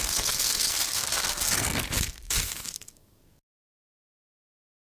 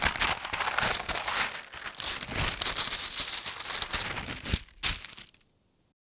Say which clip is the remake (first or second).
first